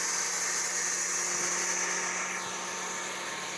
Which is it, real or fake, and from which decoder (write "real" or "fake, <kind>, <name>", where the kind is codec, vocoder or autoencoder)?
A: real